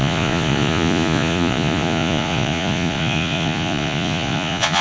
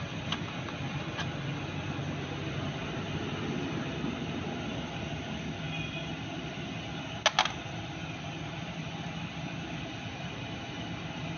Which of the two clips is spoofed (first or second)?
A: first